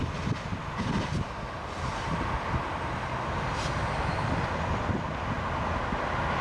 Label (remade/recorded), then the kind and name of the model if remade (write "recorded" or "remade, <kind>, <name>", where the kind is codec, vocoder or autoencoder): recorded